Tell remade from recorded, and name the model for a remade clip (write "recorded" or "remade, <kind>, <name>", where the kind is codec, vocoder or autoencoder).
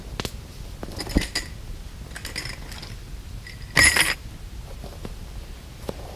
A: recorded